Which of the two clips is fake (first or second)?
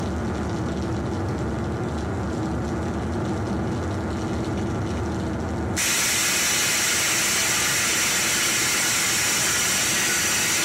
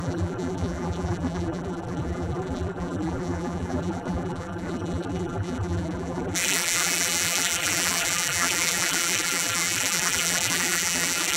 second